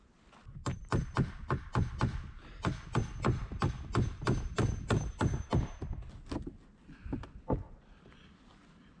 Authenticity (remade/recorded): recorded